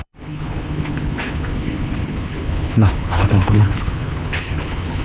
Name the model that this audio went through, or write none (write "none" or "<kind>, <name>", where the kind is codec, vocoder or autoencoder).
codec, HILCodec